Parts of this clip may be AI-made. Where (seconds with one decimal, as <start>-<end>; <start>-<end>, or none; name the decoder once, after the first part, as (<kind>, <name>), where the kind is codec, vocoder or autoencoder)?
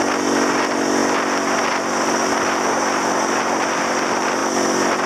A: none